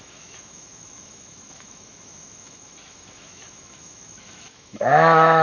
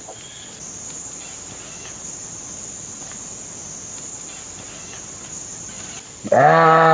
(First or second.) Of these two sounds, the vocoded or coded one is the first